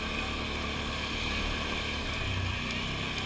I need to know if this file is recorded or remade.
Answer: recorded